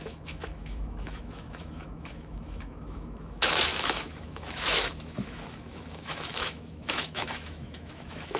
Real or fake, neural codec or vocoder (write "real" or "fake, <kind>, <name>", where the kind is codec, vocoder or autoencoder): fake, autoencoder, DAC-VAE